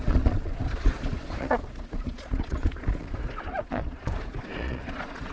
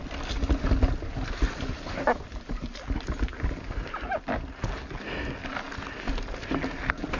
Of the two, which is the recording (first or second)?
second